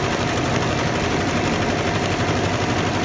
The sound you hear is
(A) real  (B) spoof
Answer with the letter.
A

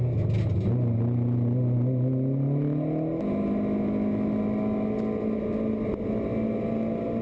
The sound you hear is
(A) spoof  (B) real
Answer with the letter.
B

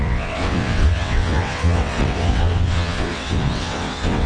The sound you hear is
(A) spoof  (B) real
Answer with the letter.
A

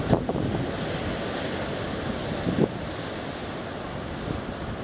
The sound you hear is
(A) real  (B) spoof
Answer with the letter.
A